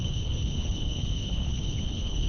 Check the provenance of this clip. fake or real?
fake